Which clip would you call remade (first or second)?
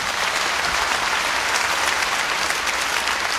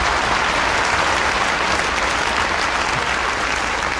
first